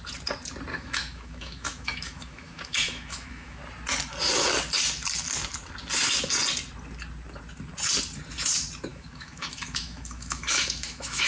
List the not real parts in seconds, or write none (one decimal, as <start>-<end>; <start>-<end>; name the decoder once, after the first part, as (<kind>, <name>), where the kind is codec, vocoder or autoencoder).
0.7-3.6 (autoencoder, DAC-VAE); 8.9-11.3